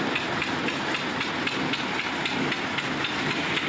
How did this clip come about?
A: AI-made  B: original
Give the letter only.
B